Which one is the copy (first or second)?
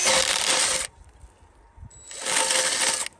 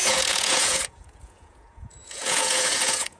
second